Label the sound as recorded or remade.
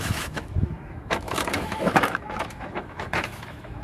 remade